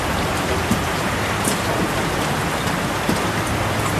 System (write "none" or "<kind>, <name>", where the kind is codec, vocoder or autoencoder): vocoder, BigVGAN v2